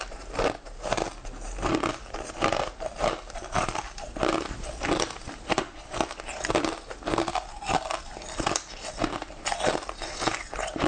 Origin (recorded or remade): recorded